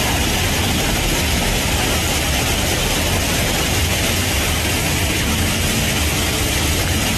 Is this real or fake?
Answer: real